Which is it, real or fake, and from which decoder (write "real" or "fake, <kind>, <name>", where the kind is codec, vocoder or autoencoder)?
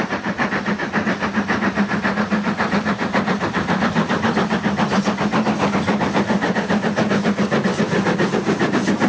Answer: real